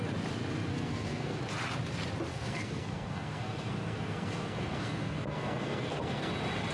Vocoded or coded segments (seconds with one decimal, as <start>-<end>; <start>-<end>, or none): 0.7-1.4; 2.3-6.3